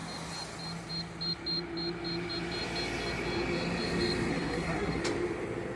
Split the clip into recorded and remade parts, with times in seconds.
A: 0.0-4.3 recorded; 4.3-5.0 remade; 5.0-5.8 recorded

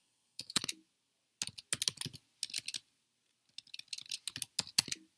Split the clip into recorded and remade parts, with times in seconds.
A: 0.0-0.6 remade; 0.6-5.2 recorded

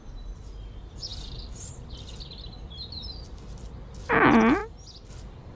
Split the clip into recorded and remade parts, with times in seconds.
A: 0.0-5.6 recorded